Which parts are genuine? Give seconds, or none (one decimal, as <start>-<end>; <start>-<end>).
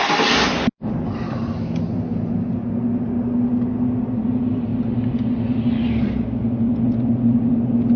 0.0-2.1; 2.7-8.0